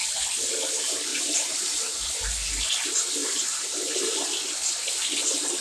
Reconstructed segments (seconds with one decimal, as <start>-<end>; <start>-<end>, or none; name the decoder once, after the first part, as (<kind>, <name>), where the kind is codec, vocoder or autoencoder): 1.1-2.1 (vocoder, BigVGAN v2); 3.2-4.1